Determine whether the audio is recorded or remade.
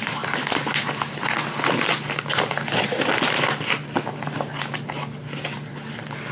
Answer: recorded